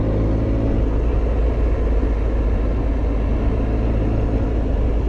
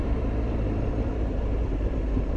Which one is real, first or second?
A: first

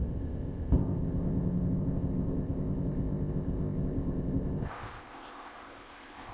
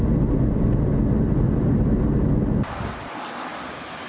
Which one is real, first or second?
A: second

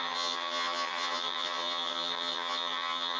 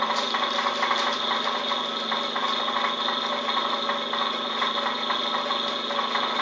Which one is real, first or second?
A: second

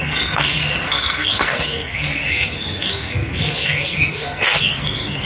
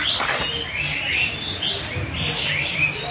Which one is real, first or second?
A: second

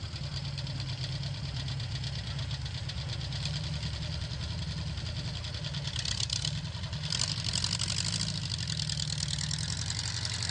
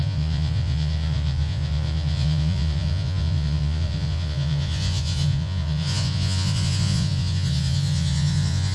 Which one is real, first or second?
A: first